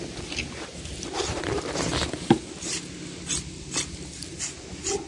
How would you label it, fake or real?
real